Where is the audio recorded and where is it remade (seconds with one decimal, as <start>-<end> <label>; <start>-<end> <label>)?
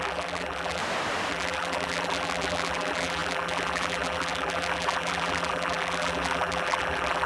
0.0-0.8 remade; 0.8-1.3 recorded; 1.3-7.3 remade